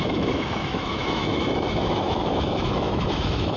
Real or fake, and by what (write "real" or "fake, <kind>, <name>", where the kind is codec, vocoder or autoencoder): fake, autoencoder, DAC-VAE